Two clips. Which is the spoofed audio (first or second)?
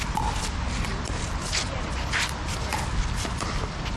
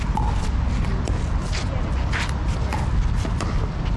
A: first